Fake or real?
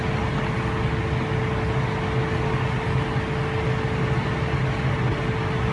real